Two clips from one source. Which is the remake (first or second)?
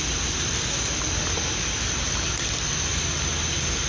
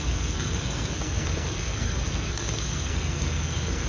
second